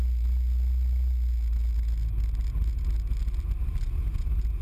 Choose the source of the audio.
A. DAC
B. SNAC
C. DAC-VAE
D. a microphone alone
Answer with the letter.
D